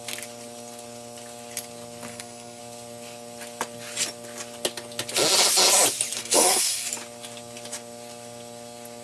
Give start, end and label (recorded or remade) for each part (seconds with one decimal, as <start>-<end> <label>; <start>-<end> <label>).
0.0-2.1 recorded; 2.1-2.6 remade; 2.6-6.2 recorded; 6.2-6.9 remade; 6.9-9.0 recorded